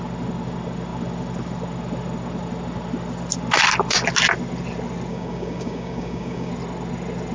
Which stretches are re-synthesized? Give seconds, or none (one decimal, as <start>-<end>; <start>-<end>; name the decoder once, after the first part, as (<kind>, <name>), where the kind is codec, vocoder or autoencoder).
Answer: 5.1-6.5 (codec, DAC)

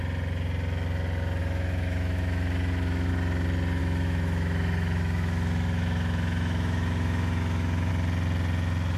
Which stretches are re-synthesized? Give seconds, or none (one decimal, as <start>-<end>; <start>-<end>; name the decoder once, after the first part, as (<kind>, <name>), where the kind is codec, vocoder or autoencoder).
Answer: 1.4-3.1 (autoencoder, DAC-VAE); 3.8-7.9

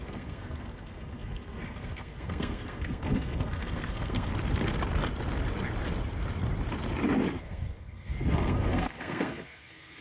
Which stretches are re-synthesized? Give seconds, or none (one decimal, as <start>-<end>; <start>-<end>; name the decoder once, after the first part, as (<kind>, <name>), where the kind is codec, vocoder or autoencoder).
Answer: 0.0-4.3 (codec, SNAC); 7.4-10.0

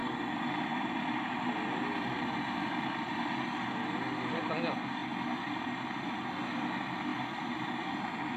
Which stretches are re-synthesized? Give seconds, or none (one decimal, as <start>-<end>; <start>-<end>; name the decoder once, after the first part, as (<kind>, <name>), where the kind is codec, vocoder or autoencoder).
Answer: 0.0-1.5 (vocoder, BigVGAN v2); 7.1-7.7